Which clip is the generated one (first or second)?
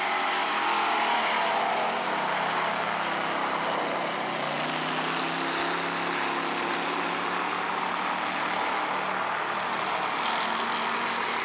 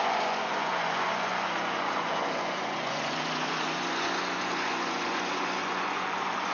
second